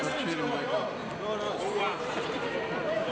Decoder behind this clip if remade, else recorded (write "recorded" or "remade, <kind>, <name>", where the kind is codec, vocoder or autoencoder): recorded